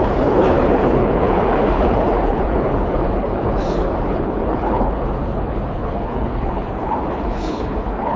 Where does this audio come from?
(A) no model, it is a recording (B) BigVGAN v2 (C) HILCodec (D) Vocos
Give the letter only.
C